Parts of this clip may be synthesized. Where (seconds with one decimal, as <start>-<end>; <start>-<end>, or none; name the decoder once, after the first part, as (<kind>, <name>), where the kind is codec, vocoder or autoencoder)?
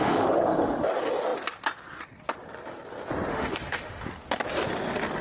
0.0-0.9 (autoencoder, DAC-VAE); 3.3-4.1